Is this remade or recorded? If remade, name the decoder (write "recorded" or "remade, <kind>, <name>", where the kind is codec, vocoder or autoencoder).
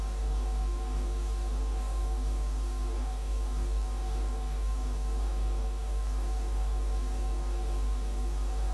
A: remade, codec, DAC